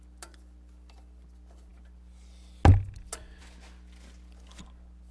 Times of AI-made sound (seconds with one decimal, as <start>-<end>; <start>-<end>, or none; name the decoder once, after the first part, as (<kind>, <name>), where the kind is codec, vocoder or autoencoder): none